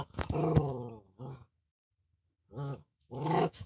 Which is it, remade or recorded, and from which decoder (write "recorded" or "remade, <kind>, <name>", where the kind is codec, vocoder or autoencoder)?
remade, autoencoder, DAC-VAE